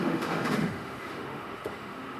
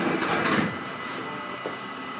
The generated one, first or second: first